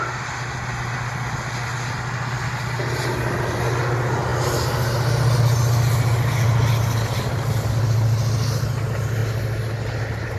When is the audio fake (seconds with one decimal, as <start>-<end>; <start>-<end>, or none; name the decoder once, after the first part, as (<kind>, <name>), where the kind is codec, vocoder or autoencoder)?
none